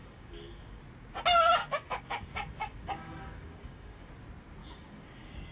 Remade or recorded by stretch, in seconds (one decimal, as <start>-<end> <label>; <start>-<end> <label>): 0.0-0.8 remade; 0.8-1.6 recorded; 1.6-4.1 remade; 4.1-4.6 recorded; 4.6-5.5 remade

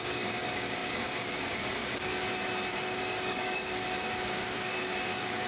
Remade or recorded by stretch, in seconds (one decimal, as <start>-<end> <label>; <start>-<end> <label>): 0.0-2.1 remade; 2.1-2.7 recorded; 2.7-5.5 remade

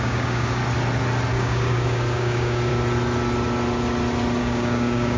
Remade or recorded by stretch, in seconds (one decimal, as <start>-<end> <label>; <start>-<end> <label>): 0.0-0.6 remade; 0.6-1.3 recorded; 1.3-2.7 remade; 2.7-4.4 recorded; 4.4-5.2 remade

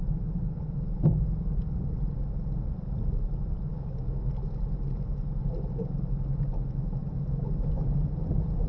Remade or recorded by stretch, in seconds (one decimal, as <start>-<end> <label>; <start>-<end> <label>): 0.0-3.7 recorded; 3.7-4.3 remade; 4.3-8.7 recorded

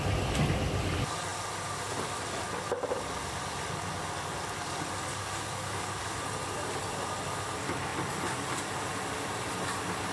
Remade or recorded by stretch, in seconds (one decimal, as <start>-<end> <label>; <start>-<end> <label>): 0.0-5.1 recorded; 5.1-6.0 remade; 6.0-10.1 recorded

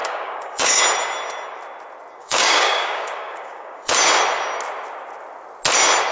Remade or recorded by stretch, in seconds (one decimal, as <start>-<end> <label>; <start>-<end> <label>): 0.0-0.8 remade; 0.8-2.2 recorded; 2.2-3.9 remade; 3.9-6.1 recorded